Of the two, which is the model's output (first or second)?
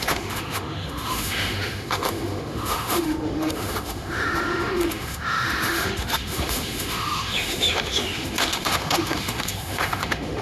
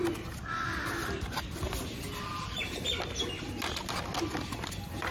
first